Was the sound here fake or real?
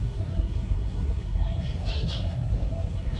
fake